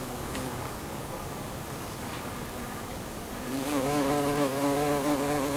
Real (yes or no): no